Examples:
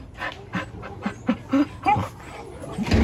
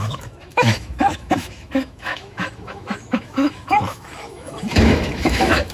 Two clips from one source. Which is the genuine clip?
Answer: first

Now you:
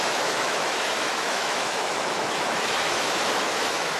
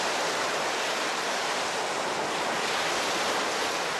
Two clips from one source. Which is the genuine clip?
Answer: second